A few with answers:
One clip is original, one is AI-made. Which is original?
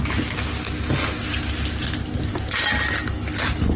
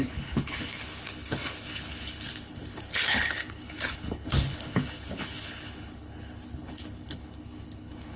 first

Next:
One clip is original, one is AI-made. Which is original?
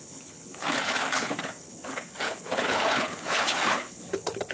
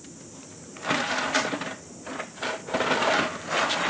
second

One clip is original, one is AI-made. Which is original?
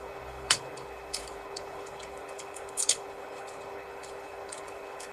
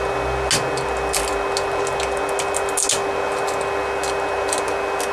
second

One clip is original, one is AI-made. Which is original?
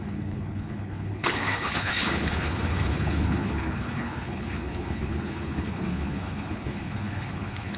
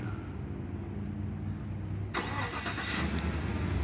second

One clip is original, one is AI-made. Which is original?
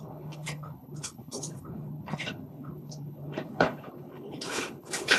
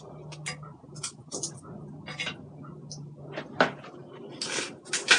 second